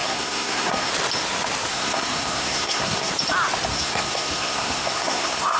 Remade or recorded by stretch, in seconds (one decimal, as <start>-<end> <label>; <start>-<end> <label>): 0.0-0.9 remade; 0.9-1.7 recorded; 1.7-3.1 remade; 3.1-3.7 recorded; 3.7-5.6 remade